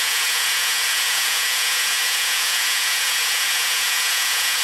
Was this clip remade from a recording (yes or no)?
yes